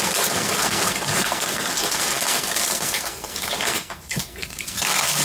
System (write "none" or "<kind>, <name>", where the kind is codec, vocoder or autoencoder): codec, SNAC